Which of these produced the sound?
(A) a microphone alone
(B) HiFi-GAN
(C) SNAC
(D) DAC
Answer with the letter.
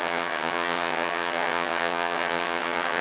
B